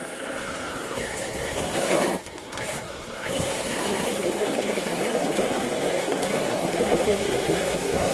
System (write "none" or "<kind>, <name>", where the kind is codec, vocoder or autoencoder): codec, SNAC